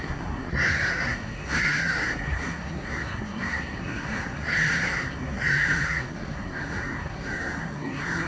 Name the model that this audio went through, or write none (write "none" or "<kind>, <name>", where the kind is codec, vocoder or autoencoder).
codec, SNAC